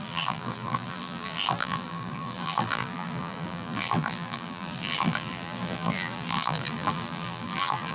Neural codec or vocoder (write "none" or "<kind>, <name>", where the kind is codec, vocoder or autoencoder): vocoder, BigVGAN v2